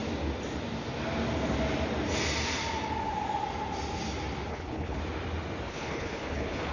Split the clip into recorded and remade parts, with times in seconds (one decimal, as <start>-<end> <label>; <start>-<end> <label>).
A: 0.0-4.5 recorded; 4.5-5.0 remade; 5.0-5.7 recorded; 5.7-6.7 remade

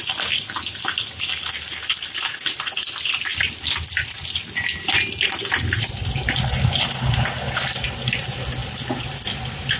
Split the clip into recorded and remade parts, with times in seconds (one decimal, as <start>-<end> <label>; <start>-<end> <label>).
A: 0.0-9.8 recorded

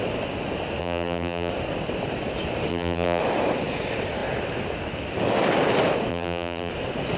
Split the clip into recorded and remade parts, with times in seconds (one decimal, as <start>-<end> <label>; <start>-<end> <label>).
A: 0.0-0.8 recorded; 0.8-1.5 remade; 1.5-2.7 recorded; 2.7-3.2 remade; 3.2-6.1 recorded; 6.1-6.7 remade; 6.7-7.2 recorded